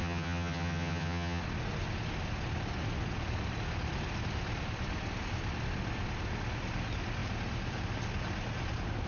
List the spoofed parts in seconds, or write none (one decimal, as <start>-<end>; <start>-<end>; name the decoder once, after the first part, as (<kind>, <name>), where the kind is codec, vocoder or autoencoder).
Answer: 0.0-1.4 (vocoder, HiFi-GAN)